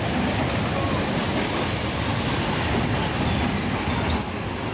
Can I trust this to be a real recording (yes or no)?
yes